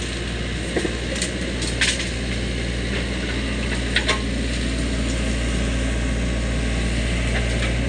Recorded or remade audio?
recorded